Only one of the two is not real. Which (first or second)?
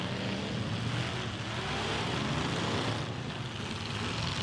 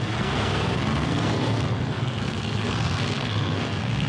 second